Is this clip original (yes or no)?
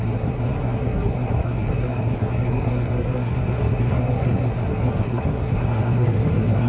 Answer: no